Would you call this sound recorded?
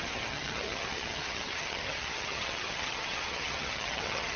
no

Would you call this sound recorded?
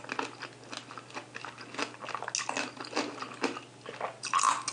yes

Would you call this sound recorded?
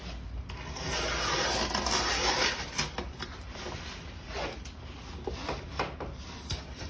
yes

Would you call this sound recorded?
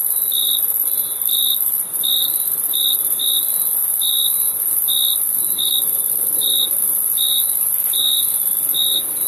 yes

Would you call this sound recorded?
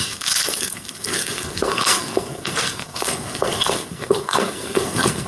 no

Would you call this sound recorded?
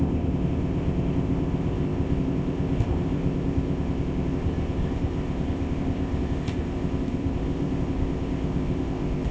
no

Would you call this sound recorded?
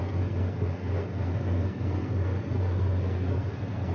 no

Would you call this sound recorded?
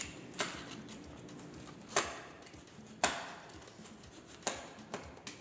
yes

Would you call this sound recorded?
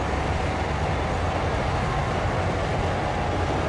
yes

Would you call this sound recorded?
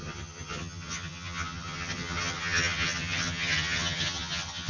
no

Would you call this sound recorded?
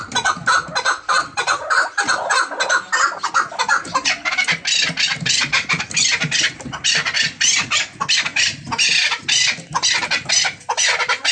yes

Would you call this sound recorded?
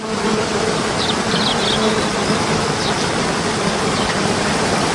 no